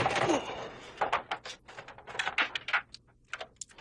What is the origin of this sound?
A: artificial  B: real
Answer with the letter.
B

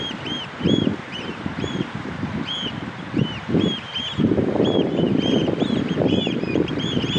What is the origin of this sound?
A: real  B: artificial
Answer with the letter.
B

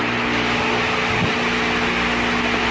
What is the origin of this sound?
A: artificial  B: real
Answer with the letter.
B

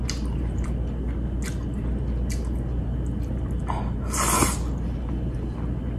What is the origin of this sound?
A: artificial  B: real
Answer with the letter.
B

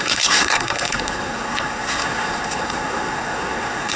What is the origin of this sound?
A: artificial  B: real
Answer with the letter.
A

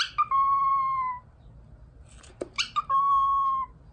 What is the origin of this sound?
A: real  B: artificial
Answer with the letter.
A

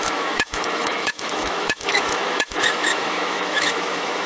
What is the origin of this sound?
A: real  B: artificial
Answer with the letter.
B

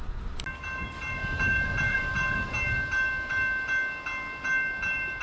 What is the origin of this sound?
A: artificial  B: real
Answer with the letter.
B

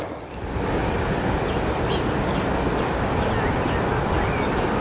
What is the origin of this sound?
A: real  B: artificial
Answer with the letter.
A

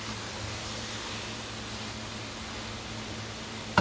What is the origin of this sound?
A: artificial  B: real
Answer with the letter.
B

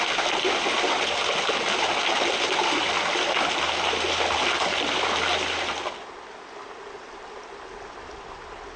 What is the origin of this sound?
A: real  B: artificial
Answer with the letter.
A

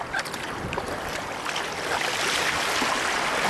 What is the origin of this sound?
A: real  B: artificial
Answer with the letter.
A